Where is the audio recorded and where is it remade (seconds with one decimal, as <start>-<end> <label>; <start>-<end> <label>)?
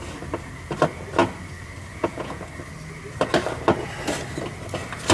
0.0-1.9 recorded; 1.9-2.5 remade; 2.5-5.1 recorded